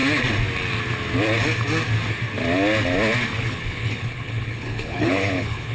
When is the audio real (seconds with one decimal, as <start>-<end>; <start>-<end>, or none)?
0.0-3.4

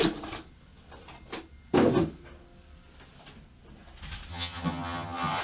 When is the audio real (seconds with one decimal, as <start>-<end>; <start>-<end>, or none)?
0.0-4.3

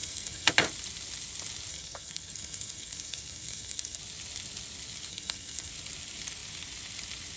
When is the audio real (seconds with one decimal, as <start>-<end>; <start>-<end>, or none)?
0.5-1.7; 4.0-5.1; 5.7-7.4

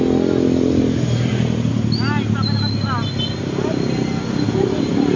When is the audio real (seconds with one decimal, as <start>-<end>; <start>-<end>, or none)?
0.0-5.2